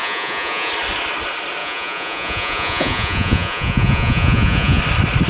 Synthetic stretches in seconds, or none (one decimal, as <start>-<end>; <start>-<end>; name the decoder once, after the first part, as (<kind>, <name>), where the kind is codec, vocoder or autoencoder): 0.0-0.7 (vocoder, Vocos); 1.6-4.8